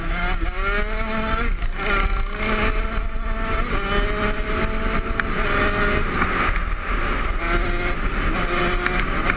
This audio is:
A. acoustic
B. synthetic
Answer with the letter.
A